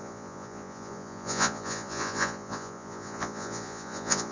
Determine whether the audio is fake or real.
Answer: fake